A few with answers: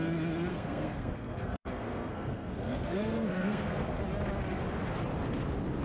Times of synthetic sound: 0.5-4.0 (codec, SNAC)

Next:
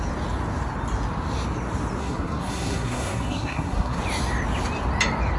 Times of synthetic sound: 2.0-4.0 (codec, SNAC)

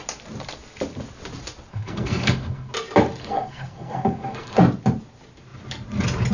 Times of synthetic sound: 1.7-2.7 (codec, SNAC); 3.2-4.6

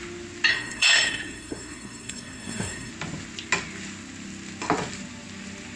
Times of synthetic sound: 0.5-2.9 (codec, SNAC)

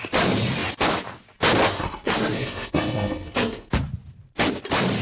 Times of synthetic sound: 1.7-3.7 (codec, SNAC)

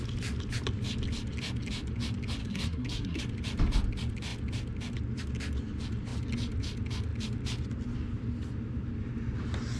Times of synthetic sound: 2.4-3.2 (codec, SNAC)

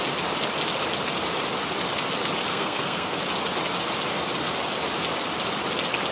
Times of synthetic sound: 2.5-3.2 (codec, SNAC)